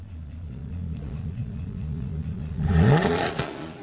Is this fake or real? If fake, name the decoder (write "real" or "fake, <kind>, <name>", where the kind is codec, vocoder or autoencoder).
fake, vocoder, Vocos